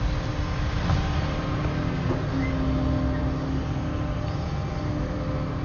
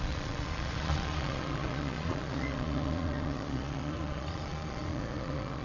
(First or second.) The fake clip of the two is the second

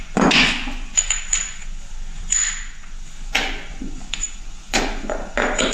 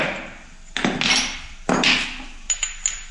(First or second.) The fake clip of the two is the first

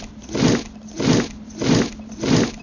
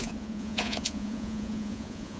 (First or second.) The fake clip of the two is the second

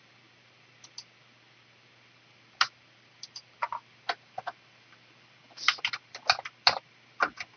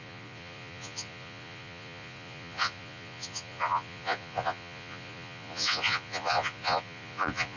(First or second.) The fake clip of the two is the second